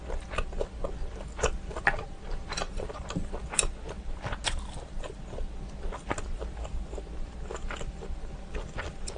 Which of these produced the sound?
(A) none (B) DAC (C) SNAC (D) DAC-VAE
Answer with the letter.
A